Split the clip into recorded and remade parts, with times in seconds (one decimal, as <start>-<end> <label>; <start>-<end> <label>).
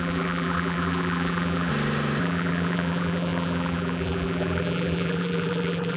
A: 0.0-1.7 remade; 1.7-2.2 recorded; 2.2-6.0 remade